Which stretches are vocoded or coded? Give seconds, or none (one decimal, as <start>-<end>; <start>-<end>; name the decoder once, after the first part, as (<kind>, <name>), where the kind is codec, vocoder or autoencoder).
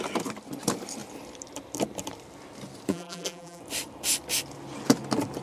2.9-3.6 (vocoder, BigVGAN v2)